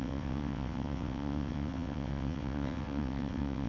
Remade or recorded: remade